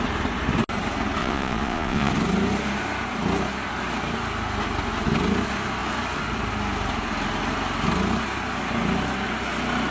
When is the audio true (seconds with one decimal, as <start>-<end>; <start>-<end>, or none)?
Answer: 0.0-1.2; 2.1-9.9